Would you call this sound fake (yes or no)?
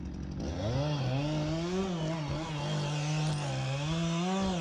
no